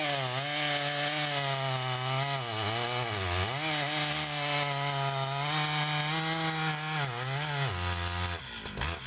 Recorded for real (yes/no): yes